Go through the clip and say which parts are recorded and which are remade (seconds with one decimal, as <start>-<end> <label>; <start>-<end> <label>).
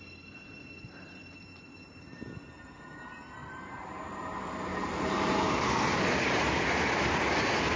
0.0-3.4 recorded; 3.4-4.0 remade; 4.0-4.7 recorded; 4.7-6.0 remade; 6.0-7.8 recorded